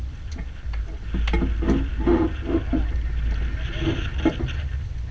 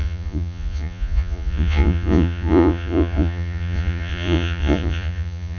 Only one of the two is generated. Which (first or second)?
second